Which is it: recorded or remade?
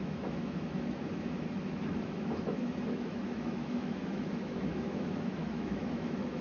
remade